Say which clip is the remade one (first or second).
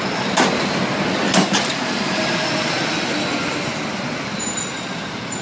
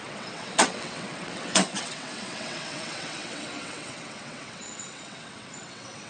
second